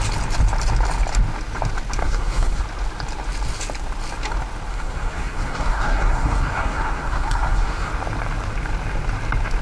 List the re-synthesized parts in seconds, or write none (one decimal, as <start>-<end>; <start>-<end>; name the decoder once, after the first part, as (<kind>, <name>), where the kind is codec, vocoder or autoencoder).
2.0-2.6 (codec, SNAC); 4.7-7.9

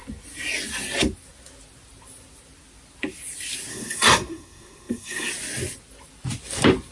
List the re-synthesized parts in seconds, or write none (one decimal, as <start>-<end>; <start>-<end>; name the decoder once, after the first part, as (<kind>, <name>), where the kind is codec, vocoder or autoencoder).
3.7-5.3 (codec, SNAC)

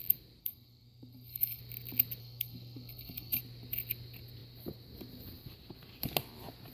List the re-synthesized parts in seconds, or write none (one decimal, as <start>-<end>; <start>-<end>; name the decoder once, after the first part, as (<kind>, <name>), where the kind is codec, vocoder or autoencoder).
0.4-1.6 (codec, SNAC); 2.2-3.4